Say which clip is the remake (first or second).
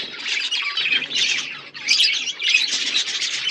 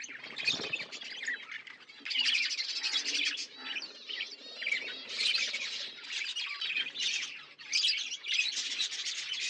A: first